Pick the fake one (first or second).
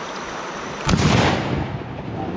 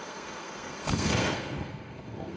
second